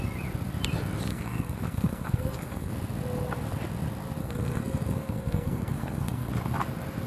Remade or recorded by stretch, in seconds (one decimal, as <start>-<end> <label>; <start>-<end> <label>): 0.0-1.1 recorded; 1.1-2.7 remade; 2.7-4.2 recorded; 4.2-6.3 remade; 6.3-7.1 recorded